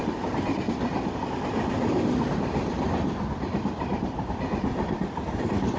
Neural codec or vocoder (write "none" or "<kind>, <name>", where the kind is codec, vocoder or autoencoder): vocoder, BigVGAN v2